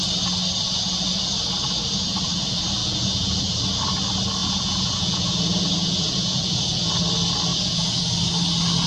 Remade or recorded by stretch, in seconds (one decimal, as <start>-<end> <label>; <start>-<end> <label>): 0.0-2.8 recorded; 2.8-3.4 remade; 3.4-4.4 recorded; 4.4-6.9 remade; 6.9-7.5 recorded; 7.5-8.0 remade; 8.0-8.9 recorded